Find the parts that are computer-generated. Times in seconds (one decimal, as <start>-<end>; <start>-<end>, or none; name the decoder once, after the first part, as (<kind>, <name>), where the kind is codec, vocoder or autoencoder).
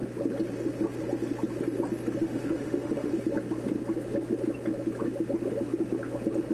2.2-3.1 (autoencoder, DAC-VAE)